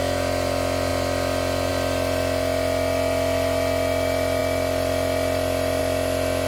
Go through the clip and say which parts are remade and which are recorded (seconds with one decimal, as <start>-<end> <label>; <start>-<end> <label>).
0.0-6.5 recorded